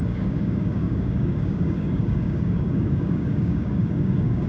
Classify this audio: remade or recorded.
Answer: remade